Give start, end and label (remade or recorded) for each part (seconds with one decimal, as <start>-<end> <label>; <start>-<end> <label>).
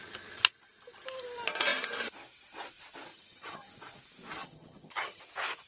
0.0-3.1 recorded; 3.1-3.7 remade; 3.7-4.4 recorded; 4.4-5.2 remade; 5.2-5.7 recorded